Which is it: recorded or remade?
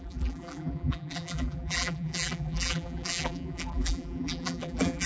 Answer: remade